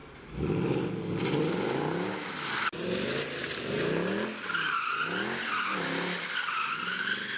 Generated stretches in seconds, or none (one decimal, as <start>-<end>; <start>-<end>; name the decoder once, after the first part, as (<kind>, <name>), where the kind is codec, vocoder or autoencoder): none